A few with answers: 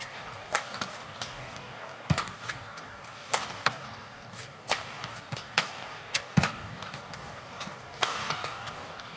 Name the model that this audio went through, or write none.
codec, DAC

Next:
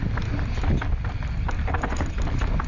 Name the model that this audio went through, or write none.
none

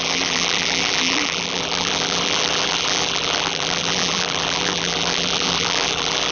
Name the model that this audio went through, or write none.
vocoder, BigVGAN v2